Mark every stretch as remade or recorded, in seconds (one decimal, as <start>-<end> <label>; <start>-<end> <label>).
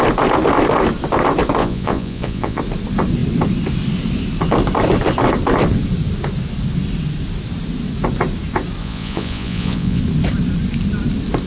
0.0-1.6 recorded; 1.6-2.6 remade; 2.6-8.8 recorded; 8.8-10.0 remade; 10.0-11.5 recorded